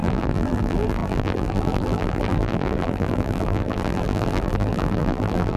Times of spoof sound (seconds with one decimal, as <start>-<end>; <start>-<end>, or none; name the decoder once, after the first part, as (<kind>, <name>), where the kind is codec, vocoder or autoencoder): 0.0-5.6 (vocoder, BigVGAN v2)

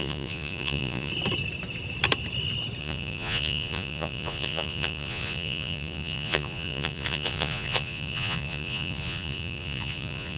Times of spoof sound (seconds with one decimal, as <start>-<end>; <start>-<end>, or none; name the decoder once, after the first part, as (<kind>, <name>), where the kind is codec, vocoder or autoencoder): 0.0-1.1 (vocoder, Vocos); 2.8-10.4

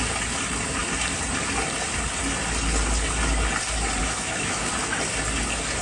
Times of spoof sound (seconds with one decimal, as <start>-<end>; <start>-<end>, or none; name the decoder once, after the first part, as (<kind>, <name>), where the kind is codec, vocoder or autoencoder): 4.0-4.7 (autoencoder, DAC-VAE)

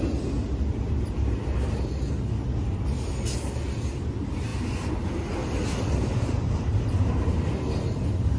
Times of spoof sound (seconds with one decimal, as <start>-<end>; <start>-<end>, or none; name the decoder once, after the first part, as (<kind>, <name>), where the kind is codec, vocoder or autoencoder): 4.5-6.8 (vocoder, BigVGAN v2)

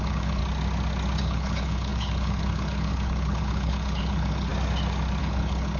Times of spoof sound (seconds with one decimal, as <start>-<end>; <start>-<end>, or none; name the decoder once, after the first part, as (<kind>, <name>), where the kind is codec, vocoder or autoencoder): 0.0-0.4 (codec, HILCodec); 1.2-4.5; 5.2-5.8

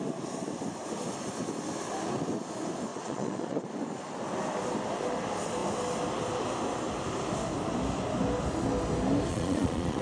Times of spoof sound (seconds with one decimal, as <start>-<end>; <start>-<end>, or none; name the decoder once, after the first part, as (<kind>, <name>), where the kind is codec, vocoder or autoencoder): 2.9-3.7 (vocoder, Vocos); 9.3-10.0

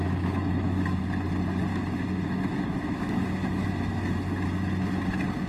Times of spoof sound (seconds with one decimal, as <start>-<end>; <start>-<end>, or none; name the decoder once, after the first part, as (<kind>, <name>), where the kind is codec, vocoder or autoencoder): 0.0-1.0 (autoencoder, DAC-VAE); 1.7-5.0

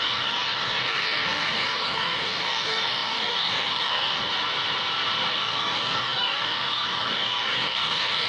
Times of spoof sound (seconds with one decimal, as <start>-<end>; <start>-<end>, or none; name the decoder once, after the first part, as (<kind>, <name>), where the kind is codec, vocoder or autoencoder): 0.0-4.3 (codec, DAC); 5.3-8.3